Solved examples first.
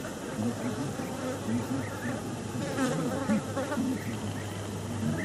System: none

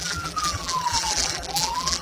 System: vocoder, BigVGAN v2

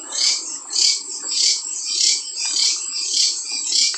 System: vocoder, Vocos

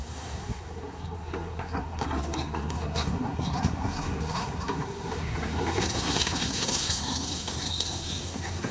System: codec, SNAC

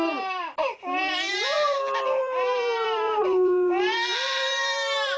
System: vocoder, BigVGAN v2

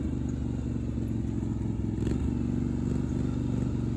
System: none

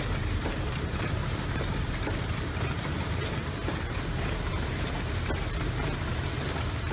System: vocoder, BigVGAN v2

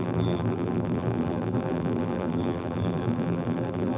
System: vocoder, BigVGAN v2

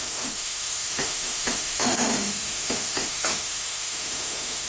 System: autoencoder, DAC-VAE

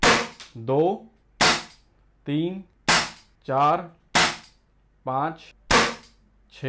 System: none